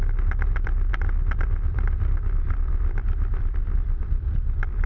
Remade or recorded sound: remade